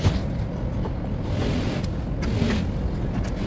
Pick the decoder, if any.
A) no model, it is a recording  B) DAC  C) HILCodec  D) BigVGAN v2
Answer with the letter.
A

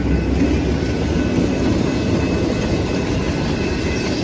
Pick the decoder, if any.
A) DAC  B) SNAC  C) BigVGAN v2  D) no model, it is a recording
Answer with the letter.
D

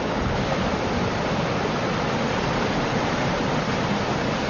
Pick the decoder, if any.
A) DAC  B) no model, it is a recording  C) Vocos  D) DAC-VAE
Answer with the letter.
B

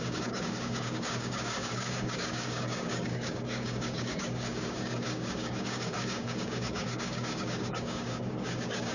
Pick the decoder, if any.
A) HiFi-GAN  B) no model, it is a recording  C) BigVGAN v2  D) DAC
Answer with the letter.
D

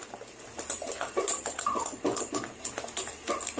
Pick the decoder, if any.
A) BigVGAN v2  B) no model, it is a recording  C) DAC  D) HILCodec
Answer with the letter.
B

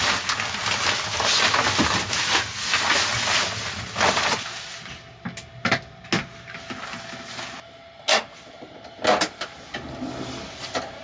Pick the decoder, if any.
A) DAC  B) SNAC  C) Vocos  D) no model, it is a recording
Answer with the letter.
D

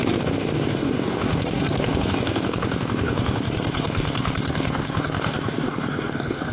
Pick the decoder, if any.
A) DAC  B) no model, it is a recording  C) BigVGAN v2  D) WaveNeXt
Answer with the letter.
A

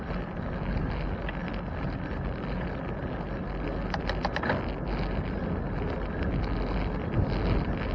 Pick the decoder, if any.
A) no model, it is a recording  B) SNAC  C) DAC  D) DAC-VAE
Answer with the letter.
A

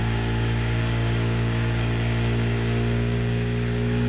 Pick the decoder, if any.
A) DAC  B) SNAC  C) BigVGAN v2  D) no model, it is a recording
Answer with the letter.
A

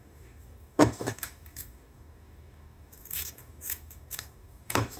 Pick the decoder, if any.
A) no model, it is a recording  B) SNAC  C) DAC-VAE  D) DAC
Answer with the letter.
D